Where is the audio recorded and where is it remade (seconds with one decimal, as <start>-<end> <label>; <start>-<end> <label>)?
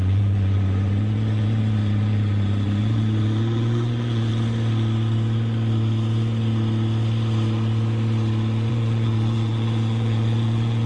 0.0-4.3 remade; 4.3-8.7 recorded; 8.7-10.9 remade